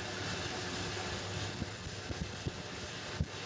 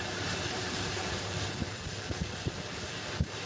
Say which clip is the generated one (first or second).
second